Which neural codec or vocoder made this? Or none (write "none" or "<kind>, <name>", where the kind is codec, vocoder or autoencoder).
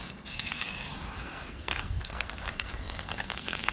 codec, SNAC